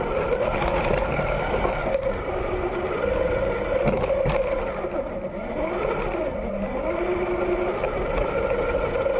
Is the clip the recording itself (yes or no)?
yes